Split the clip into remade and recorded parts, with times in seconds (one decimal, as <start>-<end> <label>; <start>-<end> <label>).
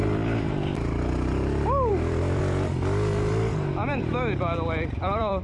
0.0-1.9 recorded; 1.9-2.4 remade; 2.4-3.8 recorded; 3.8-5.4 remade